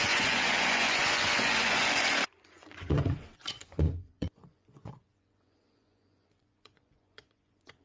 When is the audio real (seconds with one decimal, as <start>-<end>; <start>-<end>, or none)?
none